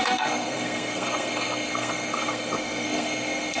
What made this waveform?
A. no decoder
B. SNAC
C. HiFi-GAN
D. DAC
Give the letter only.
B